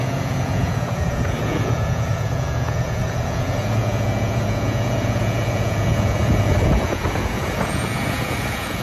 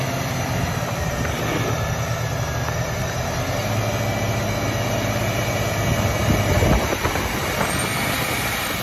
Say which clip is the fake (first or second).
first